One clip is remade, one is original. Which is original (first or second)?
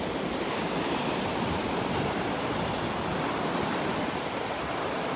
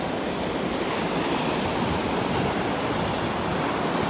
second